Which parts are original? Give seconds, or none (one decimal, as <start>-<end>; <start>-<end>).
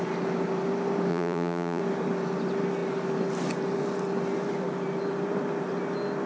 0.0-1.1; 1.8-6.3